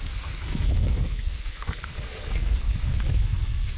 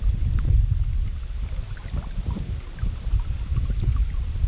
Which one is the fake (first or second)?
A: first